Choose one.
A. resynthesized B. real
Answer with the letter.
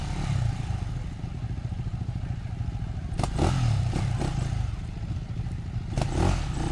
B